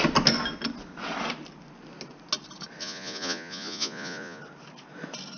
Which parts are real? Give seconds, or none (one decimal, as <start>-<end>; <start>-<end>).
0.0-2.8; 4.4-5.4